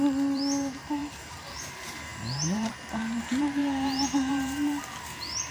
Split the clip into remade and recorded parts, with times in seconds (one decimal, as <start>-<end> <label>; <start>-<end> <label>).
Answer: 0.0-5.5 remade